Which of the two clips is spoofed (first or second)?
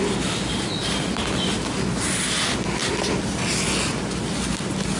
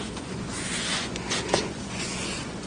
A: second